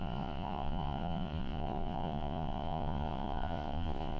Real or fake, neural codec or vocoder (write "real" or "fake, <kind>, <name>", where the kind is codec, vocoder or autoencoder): fake, vocoder, Vocos